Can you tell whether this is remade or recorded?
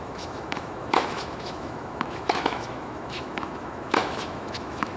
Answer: remade